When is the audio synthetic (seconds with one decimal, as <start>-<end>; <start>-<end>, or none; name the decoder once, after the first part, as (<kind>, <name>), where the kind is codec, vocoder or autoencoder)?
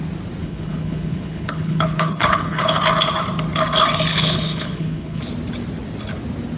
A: 0.4-2.8 (codec, HILCodec); 4.1-5.2